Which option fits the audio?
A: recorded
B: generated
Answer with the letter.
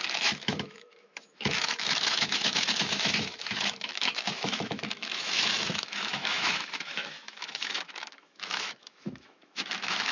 B